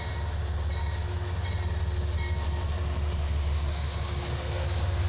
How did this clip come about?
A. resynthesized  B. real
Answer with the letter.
B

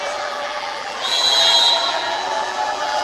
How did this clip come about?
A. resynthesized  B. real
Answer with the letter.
A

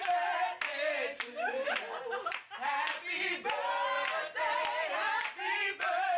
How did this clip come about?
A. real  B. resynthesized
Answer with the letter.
A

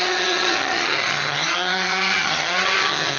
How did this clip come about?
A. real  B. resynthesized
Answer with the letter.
B